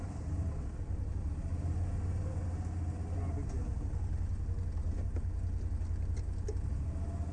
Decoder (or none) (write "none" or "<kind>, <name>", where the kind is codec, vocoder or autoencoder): none